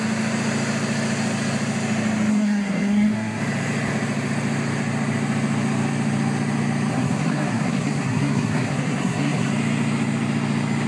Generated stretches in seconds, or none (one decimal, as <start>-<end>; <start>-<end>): 2.3-3.4; 6.9-9.5

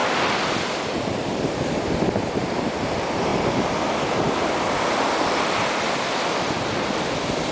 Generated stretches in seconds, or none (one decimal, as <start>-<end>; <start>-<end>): none